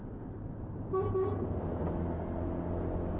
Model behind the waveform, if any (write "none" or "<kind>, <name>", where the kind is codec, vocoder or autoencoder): none